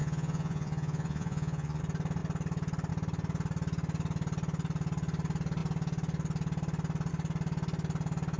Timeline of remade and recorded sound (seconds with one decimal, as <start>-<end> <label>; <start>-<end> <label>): 0.0-1.8 remade; 1.8-8.4 recorded